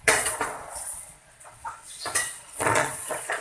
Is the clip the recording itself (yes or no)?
no